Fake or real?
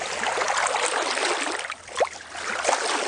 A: real